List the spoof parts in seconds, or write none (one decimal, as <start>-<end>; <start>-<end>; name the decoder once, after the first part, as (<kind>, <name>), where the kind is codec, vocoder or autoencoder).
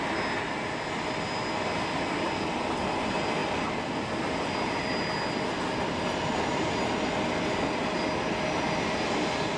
none